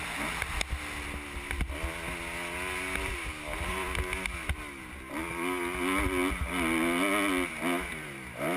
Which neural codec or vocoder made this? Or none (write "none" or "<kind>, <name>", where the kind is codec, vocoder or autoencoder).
none